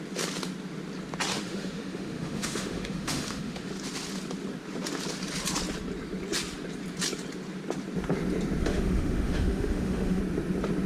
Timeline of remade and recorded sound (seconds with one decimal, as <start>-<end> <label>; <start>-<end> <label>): 0.0-1.3 recorded; 1.3-3.7 remade; 3.7-8.6 recorded; 8.6-10.2 remade; 10.2-10.9 recorded